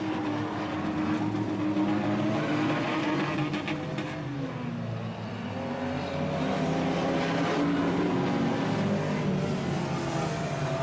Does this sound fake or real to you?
real